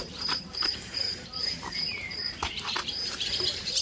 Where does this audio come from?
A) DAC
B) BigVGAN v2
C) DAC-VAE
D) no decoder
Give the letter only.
B